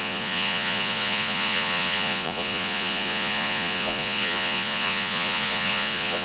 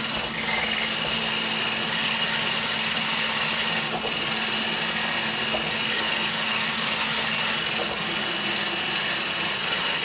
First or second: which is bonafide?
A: second